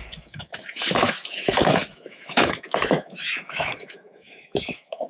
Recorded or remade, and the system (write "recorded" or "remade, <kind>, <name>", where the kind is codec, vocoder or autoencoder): remade, autoencoder, DAC-VAE